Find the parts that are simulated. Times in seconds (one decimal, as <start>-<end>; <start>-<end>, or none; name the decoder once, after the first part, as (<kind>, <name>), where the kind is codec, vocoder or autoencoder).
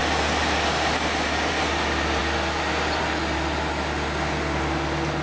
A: none